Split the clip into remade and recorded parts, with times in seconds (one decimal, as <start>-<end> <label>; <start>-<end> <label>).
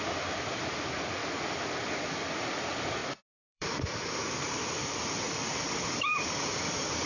0.0-1.2 remade; 1.2-2.6 recorded; 2.6-3.0 remade; 3.0-3.5 recorded; 3.5-7.1 remade